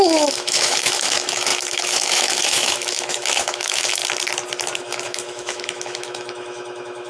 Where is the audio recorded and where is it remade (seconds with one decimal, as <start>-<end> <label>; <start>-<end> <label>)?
0.0-4.0 remade; 4.0-4.8 recorded; 4.8-7.1 remade